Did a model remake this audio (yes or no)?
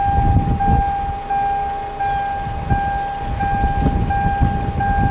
no